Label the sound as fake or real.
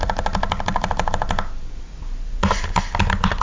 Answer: real